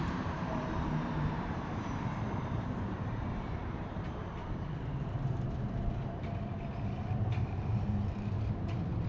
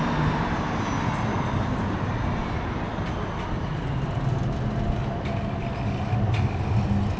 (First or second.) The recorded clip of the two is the second